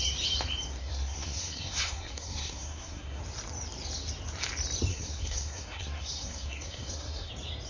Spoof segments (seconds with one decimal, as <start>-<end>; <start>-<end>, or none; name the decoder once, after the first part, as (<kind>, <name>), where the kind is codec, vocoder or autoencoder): 0.8-3.2 (codec, SNAC); 4.9-7.3